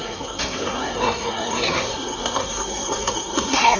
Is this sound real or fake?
fake